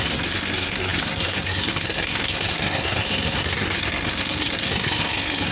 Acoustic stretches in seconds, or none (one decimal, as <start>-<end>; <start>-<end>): none